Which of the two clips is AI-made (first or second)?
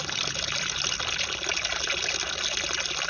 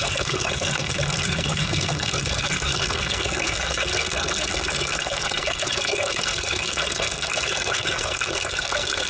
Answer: second